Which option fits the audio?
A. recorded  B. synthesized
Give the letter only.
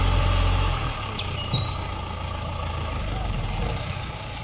B